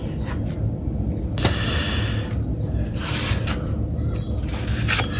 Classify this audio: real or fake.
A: real